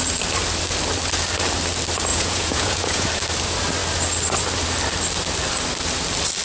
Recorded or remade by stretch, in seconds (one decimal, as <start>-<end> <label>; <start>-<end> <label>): 0.0-2.1 recorded; 2.1-3.1 remade; 3.1-6.4 recorded